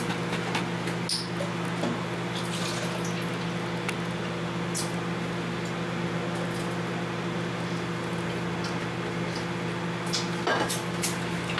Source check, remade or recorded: recorded